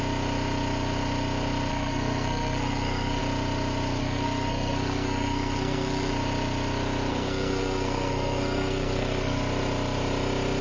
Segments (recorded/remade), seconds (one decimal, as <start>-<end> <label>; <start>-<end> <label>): 0.0-1.7 recorded; 1.7-3.2 remade; 3.2-4.0 recorded; 4.0-6.1 remade; 6.1-7.1 recorded; 7.1-9.4 remade; 9.4-10.6 recorded